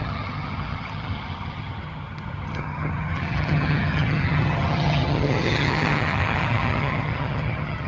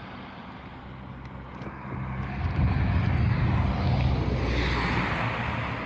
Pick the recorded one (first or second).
second